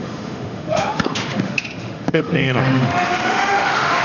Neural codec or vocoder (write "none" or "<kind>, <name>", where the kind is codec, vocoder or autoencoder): autoencoder, DAC-VAE